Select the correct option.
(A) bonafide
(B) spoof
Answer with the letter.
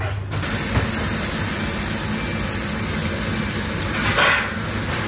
A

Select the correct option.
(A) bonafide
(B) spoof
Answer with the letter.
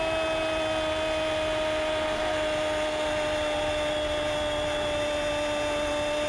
A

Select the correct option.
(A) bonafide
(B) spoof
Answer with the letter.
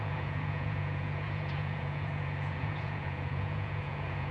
B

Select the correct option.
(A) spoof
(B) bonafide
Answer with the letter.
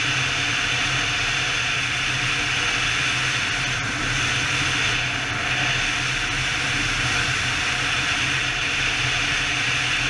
B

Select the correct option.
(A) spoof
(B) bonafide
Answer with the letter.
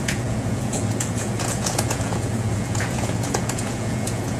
A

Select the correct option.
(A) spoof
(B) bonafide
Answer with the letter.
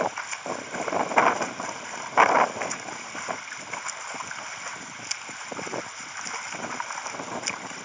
B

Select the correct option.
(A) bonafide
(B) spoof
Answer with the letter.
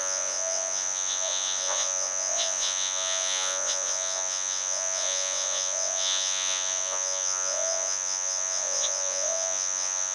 B